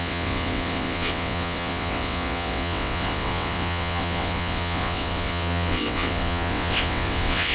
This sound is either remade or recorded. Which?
remade